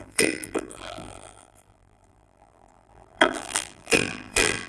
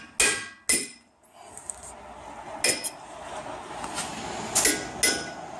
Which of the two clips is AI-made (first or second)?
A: first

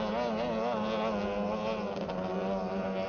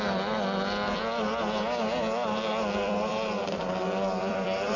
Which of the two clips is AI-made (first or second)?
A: second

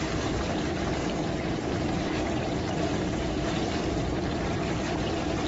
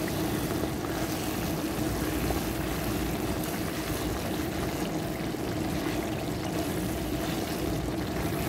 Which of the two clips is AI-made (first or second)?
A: first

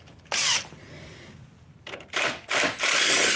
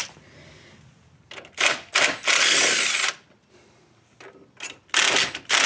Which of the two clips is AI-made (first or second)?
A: first